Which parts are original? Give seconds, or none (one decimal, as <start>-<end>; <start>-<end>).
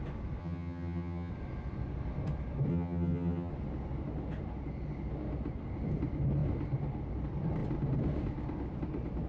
0.0-0.4; 1.3-2.7; 3.5-9.3